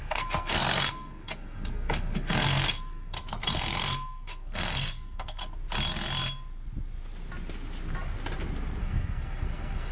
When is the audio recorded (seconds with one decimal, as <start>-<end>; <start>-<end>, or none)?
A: 5.4-8.8